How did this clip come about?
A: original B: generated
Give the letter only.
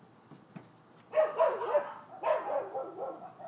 A